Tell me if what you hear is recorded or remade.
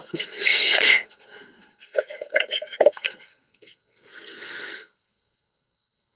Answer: remade